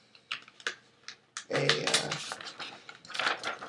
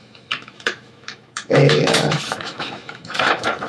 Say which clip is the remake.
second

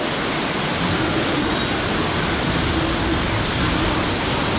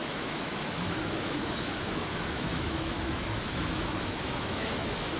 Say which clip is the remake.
second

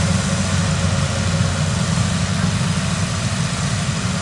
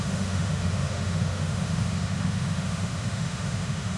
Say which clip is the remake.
second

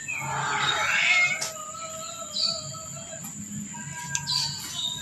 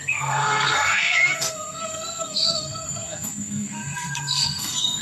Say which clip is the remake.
second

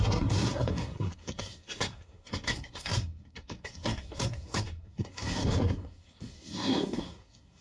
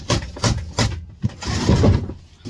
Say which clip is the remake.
first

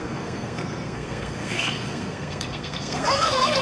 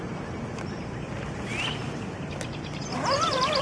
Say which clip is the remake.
first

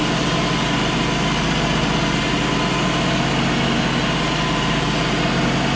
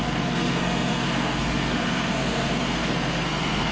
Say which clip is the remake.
second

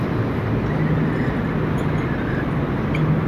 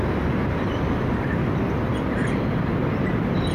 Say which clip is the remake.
second